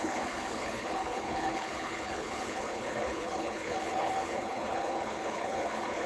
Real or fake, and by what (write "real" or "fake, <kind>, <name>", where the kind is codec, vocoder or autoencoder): fake, codec, HILCodec